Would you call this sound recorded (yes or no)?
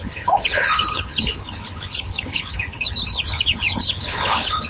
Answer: no